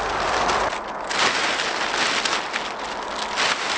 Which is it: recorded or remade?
recorded